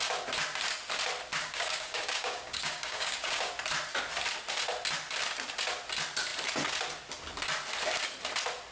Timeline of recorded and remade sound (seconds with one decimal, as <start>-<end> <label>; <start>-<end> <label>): 0.0-1.4 recorded; 1.4-3.5 remade; 3.5-8.7 recorded